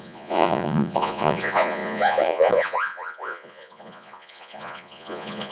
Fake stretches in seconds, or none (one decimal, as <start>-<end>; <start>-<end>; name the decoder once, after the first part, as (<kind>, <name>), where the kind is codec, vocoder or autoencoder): 0.0-5.5 (vocoder, Vocos)